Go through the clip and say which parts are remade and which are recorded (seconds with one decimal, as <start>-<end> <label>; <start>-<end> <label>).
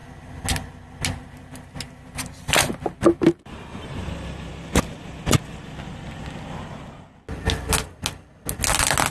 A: 0.0-9.1 recorded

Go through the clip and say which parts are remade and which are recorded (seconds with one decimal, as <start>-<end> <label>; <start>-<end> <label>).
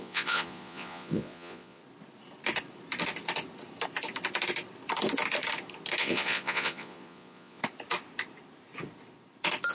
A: 0.0-1.8 remade; 1.8-6.0 recorded; 6.0-7.6 remade; 7.6-9.7 recorded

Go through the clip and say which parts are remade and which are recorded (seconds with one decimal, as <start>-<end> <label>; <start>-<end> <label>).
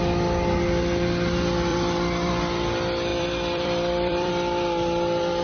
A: 0.0-1.7 recorded; 1.7-2.3 remade; 2.3-3.1 recorded; 3.1-4.3 remade; 4.3-5.4 recorded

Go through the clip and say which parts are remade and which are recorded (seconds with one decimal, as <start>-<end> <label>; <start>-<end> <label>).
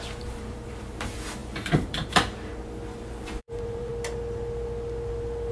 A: 0.0-2.5 remade; 2.5-3.4 recorded; 3.4-3.9 remade; 3.9-5.5 recorded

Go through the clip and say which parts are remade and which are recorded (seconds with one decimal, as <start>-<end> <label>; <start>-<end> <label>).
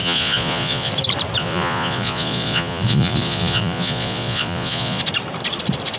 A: 0.0-0.9 remade; 0.9-1.4 recorded; 1.4-5.0 remade; 5.0-6.0 recorded